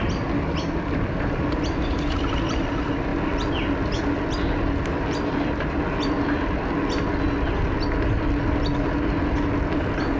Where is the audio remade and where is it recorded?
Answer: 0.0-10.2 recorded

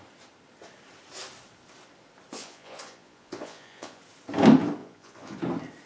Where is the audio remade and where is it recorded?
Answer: 0.0-2.3 recorded; 2.3-4.0 remade; 4.0-4.8 recorded; 4.8-5.4 remade; 5.4-5.9 recorded